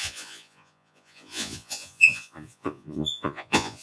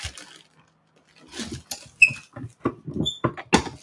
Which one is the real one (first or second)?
second